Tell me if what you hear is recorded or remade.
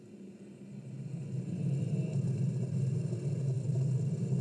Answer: recorded